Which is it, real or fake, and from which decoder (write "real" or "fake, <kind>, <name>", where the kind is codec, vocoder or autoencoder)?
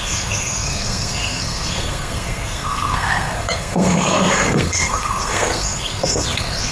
fake, codec, SNAC